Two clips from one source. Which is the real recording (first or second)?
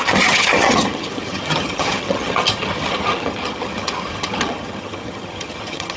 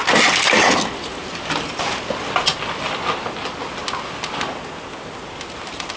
second